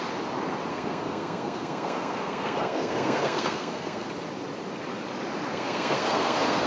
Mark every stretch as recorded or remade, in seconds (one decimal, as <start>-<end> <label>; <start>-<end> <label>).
0.0-0.7 recorded; 0.7-4.1 remade; 4.1-5.5 recorded; 5.5-6.7 remade